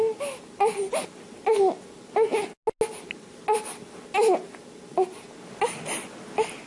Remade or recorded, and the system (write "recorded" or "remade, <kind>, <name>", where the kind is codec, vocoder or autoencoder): recorded